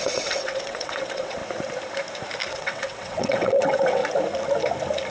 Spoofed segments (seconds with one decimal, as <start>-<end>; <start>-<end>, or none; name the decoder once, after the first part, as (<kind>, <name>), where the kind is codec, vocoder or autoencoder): 0.0-1.4 (vocoder, WaveNeXt); 2.5-4.0